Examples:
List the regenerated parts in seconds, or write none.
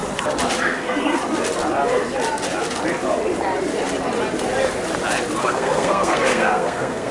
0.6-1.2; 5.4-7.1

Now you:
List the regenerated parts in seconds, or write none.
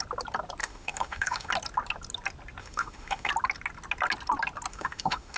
0.6-1.5; 2.6-3.3; 4.7-5.4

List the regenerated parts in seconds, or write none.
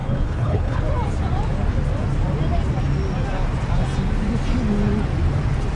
0.0-0.8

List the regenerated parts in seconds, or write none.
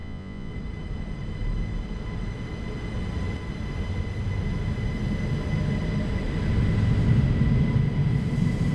0.0-0.5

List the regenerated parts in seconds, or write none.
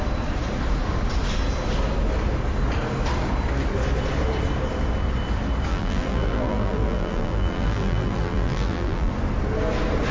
5.7-9.1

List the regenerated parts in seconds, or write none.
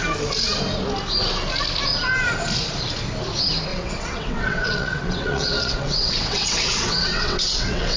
3.7-8.0